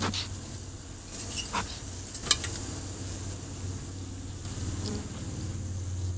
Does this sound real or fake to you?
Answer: real